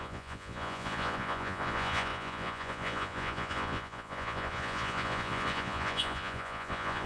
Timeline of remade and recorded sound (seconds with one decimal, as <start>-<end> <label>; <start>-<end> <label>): 0.0-7.1 remade